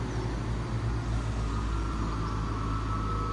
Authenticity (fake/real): real